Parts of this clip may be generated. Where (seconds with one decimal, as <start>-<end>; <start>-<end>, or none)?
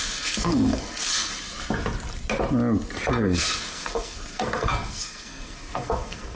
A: 0.0-1.3; 3.2-6.4